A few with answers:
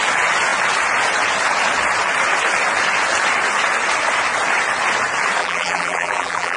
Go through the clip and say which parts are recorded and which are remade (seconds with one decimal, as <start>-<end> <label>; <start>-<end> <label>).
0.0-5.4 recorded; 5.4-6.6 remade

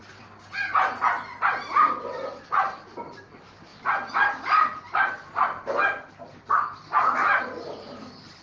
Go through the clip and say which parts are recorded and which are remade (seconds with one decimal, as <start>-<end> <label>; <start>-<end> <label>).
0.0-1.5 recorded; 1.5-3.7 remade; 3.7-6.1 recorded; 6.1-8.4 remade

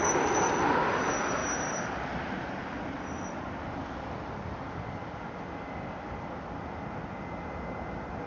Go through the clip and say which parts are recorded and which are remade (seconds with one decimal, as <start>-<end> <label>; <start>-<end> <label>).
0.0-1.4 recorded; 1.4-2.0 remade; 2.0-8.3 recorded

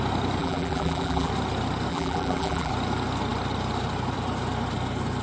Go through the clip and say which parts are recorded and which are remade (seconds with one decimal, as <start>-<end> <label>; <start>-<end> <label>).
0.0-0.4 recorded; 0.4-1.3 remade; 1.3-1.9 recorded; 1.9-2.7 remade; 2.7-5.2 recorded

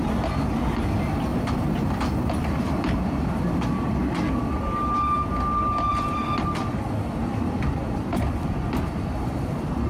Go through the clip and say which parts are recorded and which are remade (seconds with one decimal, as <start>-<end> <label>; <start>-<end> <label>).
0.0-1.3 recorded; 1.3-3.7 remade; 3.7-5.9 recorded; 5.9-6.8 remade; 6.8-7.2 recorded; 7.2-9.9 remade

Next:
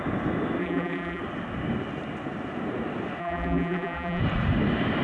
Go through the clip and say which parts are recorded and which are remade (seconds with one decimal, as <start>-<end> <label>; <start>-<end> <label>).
0.0-0.6 recorded; 0.6-1.2 remade; 1.2-3.2 recorded; 3.2-4.2 remade; 4.2-5.0 recorded

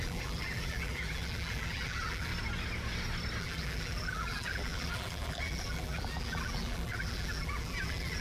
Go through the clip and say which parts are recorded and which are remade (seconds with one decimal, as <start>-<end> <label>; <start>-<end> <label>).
0.0-2.3 remade; 2.3-3.4 recorded; 3.4-8.2 remade

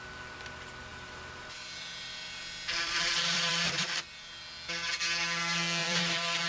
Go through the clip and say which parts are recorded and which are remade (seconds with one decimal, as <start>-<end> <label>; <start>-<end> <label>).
0.0-0.9 recorded; 0.9-4.0 remade; 4.0-5.8 recorded; 5.8-6.5 remade